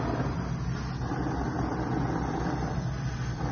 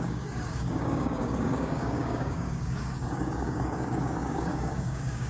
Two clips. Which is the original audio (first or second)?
first